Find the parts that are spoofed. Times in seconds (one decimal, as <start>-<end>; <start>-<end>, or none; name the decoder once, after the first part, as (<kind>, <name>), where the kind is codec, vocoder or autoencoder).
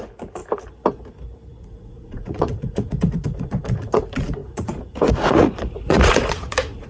0.0-0.4 (vocoder, Vocos); 1.6-6.9